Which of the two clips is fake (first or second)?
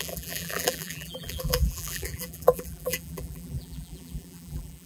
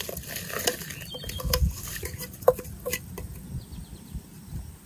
first